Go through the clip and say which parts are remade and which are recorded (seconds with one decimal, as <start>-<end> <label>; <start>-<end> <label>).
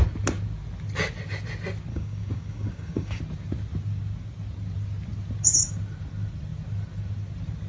0.0-1.9 recorded; 1.9-3.2 remade; 3.2-7.7 recorded